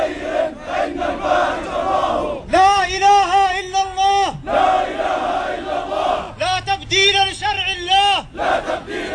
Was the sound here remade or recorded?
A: recorded